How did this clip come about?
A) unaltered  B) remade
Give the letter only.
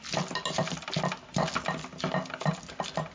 A